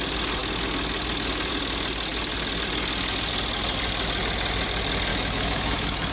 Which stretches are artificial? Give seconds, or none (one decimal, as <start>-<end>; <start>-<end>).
5.1-6.1